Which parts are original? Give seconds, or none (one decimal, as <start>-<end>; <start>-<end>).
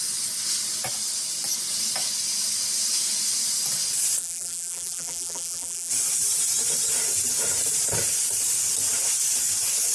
0.0-4.2; 5.9-9.9